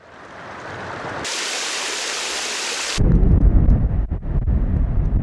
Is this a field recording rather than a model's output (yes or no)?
yes